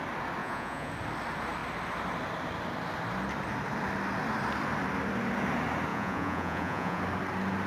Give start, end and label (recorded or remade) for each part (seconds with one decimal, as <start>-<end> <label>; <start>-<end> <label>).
0.0-0.4 recorded; 0.4-0.9 remade; 0.9-5.9 recorded; 5.9-7.0 remade; 7.0-7.7 recorded